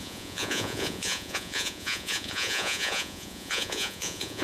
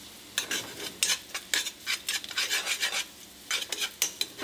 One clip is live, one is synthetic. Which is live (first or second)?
second